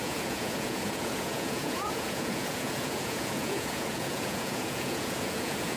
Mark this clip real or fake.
fake